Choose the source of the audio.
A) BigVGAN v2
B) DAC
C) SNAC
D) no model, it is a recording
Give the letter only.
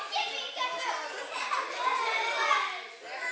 D